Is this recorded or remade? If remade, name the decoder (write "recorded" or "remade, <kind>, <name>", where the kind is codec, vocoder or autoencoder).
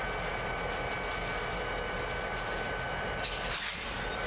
remade, vocoder, BigVGAN v2